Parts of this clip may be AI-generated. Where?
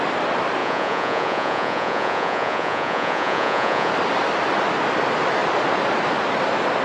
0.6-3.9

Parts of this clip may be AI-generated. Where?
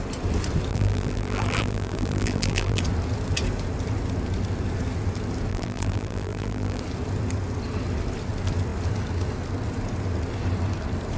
0.7-2.8; 5.5-6.8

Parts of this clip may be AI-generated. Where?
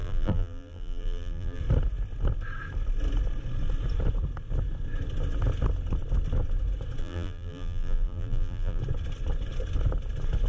0.0-1.6; 7.0-8.8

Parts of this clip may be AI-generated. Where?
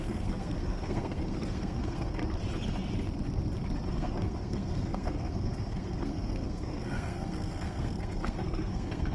0.0-2.2; 3.9-9.1